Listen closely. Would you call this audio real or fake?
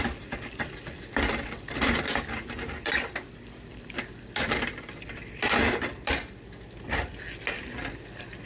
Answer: real